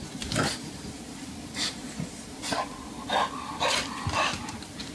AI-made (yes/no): yes